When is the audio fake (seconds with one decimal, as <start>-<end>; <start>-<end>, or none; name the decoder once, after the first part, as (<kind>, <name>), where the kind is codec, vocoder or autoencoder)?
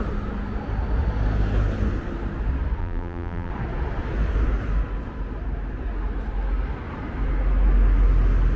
2.8-3.5 (vocoder, BigVGAN v2)